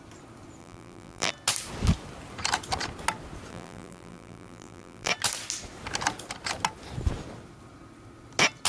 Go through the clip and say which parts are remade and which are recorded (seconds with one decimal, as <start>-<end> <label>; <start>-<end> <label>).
0.0-0.6 recorded; 0.6-1.3 remade; 1.3-3.5 recorded; 3.5-5.1 remade; 5.1-8.7 recorded